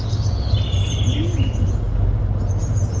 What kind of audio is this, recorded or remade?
recorded